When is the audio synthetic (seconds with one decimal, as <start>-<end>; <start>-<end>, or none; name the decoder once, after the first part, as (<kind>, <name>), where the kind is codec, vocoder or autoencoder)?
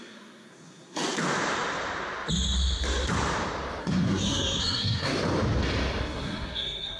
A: 0.0-1.0 (codec, SNAC); 3.8-5.1; 6.0-7.0